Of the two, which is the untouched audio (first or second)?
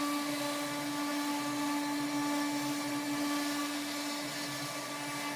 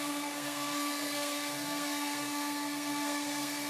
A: first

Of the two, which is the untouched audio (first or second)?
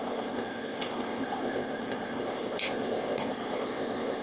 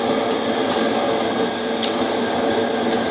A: second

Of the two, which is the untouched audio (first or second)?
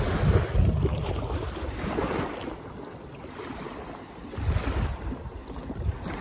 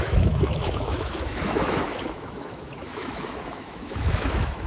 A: first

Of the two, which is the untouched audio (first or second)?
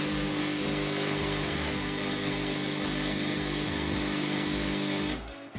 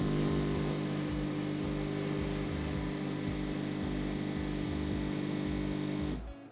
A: second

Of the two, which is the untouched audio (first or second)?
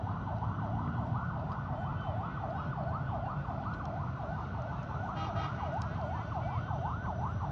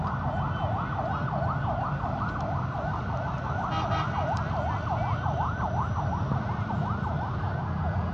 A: second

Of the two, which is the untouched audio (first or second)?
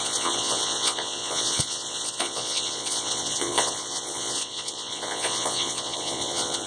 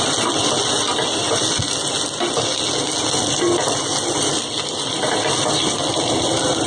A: second